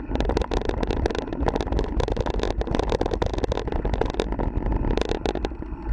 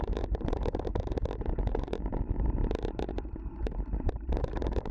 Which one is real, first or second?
first